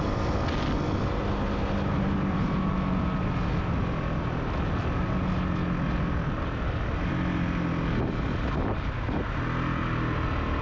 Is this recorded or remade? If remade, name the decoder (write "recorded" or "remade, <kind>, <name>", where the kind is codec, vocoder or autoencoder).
recorded